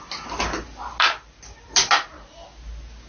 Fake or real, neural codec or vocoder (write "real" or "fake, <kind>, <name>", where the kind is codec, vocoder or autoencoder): real